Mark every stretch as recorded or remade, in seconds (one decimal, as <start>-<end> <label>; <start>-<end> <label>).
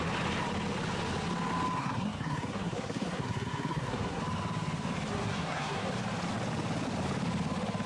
0.0-1.8 recorded; 1.8-4.2 remade; 4.2-5.1 recorded; 5.1-5.9 remade; 5.9-7.9 recorded